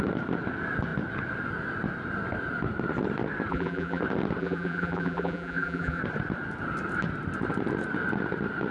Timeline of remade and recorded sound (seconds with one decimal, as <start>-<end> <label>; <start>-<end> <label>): 0.0-3.5 recorded; 3.5-4.0 remade; 4.0-4.4 recorded; 4.4-6.0 remade; 6.0-8.7 recorded